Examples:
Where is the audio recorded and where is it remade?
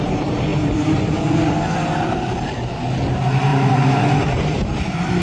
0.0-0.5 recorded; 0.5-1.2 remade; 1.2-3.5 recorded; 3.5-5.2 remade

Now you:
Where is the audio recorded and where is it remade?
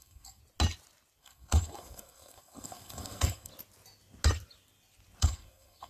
0.0-0.4 remade; 0.4-1.2 recorded; 1.2-3.5 remade; 3.5-5.2 recorded; 5.2-5.9 remade